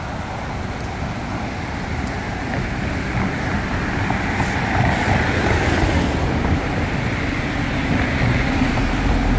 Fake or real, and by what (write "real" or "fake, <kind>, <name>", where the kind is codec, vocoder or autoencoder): real